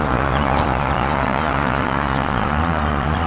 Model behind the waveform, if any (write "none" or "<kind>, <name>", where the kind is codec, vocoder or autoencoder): vocoder, Vocos